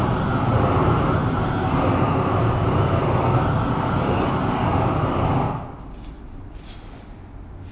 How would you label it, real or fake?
real